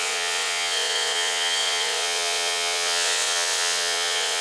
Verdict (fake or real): fake